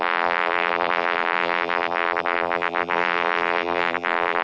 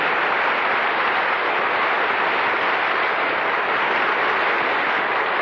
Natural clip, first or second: second